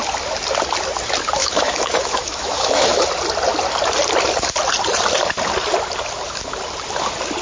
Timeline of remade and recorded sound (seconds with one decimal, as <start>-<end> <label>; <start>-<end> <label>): 0.0-1.4 recorded; 1.4-3.1 remade; 3.1-7.4 recorded